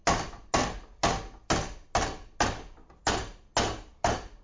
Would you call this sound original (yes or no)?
yes